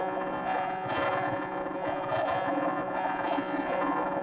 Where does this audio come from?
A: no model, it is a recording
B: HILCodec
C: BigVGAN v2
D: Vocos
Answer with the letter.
D